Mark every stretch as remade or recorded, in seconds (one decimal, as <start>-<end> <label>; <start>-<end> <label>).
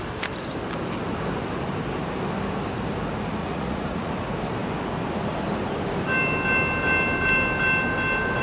0.0-3.4 recorded; 3.4-4.1 remade; 4.1-8.4 recorded